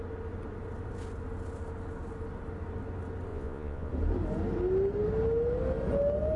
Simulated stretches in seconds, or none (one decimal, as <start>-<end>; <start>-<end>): 3.3-3.9